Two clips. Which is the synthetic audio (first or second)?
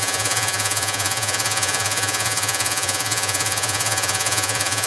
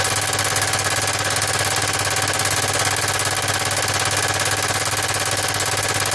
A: first